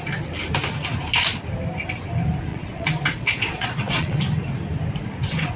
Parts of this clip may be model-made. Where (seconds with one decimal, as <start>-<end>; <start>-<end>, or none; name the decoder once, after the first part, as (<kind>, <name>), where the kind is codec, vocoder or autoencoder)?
2.5-4.2 (vocoder, Vocos)

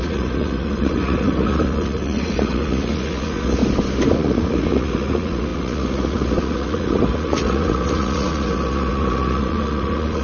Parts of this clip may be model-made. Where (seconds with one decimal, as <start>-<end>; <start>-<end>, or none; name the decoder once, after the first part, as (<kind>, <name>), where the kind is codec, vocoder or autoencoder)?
0.0-3.6 (vocoder, Vocos); 4.1-10.2

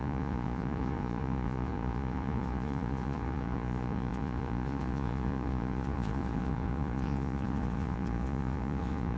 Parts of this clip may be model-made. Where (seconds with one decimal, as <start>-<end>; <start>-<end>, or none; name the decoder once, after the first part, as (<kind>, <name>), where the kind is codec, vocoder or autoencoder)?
0.0-9.2 (vocoder, Vocos)